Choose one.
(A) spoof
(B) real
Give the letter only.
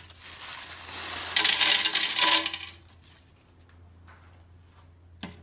B